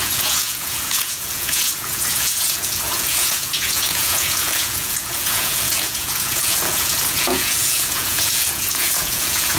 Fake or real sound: fake